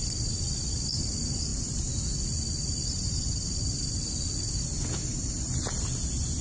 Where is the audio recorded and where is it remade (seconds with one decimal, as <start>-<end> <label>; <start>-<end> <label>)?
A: 0.0-6.4 recorded